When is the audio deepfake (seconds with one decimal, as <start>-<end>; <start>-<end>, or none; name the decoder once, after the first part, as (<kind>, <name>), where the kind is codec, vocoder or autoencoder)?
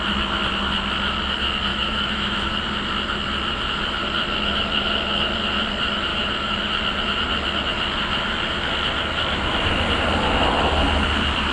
1.7-2.5 (autoencoder, DAC-VAE); 6.1-6.6